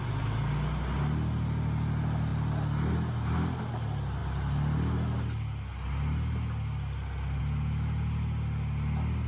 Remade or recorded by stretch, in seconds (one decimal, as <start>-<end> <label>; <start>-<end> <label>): 0.0-9.3 recorded